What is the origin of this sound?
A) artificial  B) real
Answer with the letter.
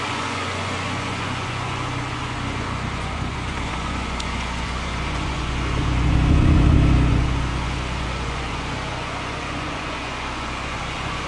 A